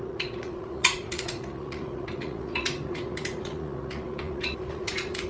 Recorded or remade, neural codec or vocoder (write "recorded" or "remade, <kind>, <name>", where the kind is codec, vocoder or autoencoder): remade, vocoder, Vocos